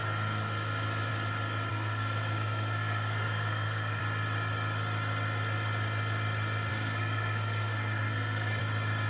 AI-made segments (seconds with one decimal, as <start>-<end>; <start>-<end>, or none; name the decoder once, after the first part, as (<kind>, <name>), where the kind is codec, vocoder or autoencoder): 1.7-4.0 (codec, SNAC); 6.7-8.6